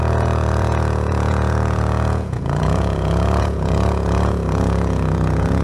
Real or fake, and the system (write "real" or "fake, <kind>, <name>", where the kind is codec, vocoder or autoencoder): fake, vocoder, Vocos